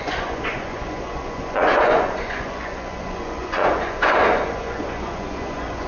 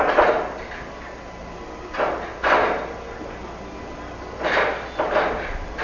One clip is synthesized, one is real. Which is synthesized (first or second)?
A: first